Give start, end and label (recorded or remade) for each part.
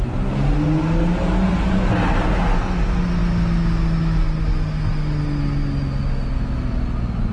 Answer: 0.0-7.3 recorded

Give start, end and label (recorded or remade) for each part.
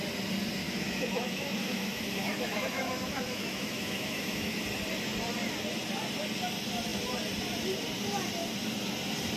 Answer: 0.0-0.6 recorded; 0.6-4.6 remade; 4.6-9.4 recorded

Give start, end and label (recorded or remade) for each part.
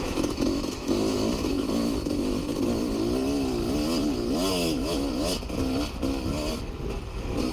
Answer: 0.0-2.5 remade; 2.5-4.5 recorded; 4.5-5.3 remade; 5.3-7.5 recorded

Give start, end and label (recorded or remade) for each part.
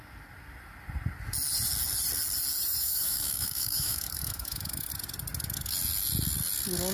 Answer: 0.0-2.8 recorded; 2.8-4.9 remade; 4.9-6.9 recorded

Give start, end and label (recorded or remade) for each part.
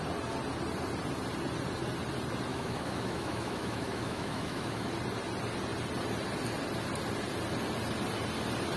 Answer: 0.0-2.5 recorded; 2.5-4.9 remade; 4.9-8.8 recorded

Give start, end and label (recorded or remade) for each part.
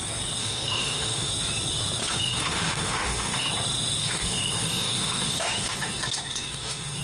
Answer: 0.0-0.4 recorded; 0.4-1.3 remade; 1.3-2.0 recorded; 2.0-3.5 remade; 3.5-4.0 recorded; 4.0-7.0 remade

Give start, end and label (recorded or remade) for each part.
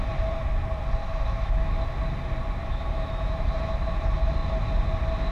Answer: 0.0-1.0 recorded; 1.0-1.8 remade; 1.8-2.6 recorded; 2.6-3.6 remade; 3.6-5.3 recorded